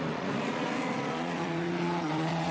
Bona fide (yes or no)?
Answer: no